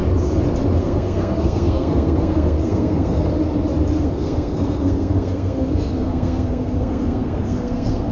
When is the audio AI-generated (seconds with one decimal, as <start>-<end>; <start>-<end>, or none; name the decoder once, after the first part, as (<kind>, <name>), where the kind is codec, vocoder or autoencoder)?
0.8-3.3 (codec, SNAC); 4.0-8.1